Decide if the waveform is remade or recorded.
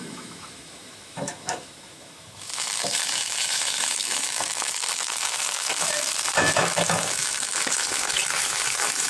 remade